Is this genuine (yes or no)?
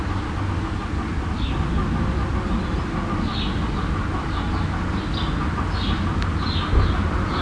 yes